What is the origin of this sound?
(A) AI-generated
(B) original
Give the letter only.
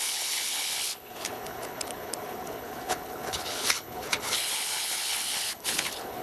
A